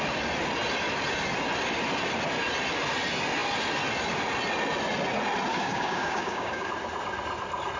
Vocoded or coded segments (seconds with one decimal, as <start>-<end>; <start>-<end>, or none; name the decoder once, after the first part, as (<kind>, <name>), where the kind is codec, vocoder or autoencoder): 5.5-6.7 (codec, DAC)